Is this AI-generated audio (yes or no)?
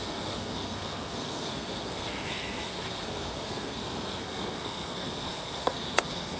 yes